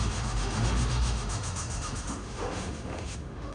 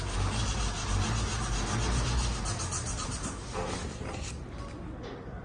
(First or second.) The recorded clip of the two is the second